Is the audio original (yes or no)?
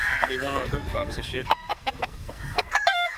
no